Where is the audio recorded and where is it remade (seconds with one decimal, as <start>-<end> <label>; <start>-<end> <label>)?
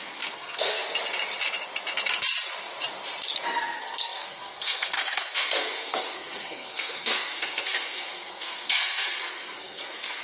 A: 0.0-0.8 remade; 0.8-3.6 recorded; 3.6-10.2 remade